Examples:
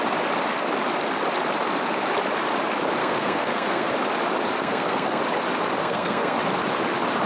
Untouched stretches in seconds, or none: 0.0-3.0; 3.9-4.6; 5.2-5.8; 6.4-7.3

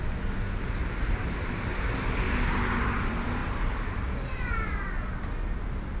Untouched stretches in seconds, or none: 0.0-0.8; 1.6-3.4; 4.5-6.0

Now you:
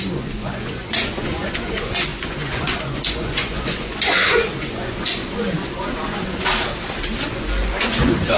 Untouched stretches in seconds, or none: 6.5-7.3